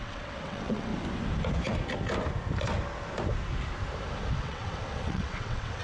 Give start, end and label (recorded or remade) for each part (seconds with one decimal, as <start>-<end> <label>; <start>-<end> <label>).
0.0-0.9 remade; 0.9-4.4 recorded; 4.4-5.8 remade